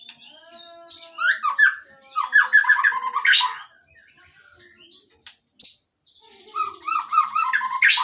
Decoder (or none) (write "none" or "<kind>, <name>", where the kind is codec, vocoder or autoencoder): none